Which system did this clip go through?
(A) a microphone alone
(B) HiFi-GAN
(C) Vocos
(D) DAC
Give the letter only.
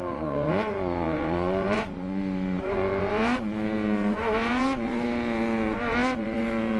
C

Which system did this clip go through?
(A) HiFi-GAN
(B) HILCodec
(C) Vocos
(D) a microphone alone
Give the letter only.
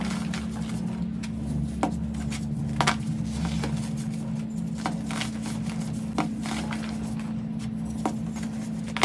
D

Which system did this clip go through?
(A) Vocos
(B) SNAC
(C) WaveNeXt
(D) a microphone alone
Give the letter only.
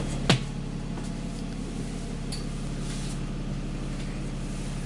D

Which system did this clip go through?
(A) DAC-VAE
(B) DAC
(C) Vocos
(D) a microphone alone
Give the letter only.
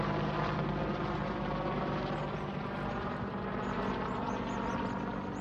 D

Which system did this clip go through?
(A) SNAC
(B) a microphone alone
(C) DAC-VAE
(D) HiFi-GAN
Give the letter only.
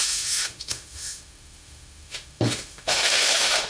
C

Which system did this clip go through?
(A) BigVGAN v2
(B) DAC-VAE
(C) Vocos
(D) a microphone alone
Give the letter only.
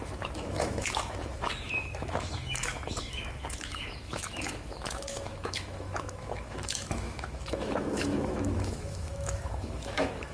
B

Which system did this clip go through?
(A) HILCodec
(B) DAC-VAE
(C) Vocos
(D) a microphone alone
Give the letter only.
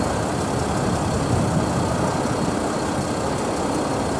D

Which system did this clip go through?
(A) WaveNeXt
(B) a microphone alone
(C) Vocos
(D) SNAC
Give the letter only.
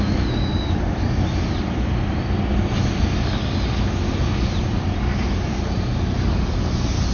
B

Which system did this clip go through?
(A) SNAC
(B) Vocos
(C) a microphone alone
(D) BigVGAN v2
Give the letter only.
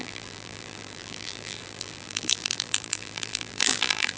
D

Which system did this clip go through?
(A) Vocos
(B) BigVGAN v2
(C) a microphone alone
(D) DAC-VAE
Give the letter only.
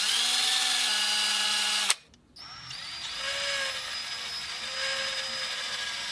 C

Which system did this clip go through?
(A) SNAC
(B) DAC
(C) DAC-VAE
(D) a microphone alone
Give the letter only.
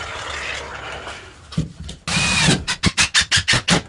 D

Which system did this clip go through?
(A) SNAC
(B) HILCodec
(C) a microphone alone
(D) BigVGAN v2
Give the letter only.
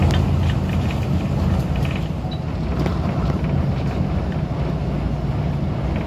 C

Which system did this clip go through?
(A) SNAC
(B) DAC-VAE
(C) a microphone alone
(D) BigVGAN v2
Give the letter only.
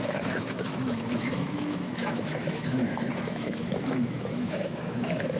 B